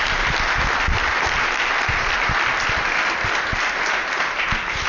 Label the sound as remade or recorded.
recorded